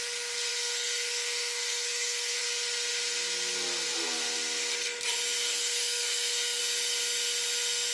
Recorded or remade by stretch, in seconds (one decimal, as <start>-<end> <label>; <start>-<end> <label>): 0.0-0.5 recorded; 0.5-2.4 remade; 2.4-5.4 recorded; 5.4-6.6 remade; 6.6-7.9 recorded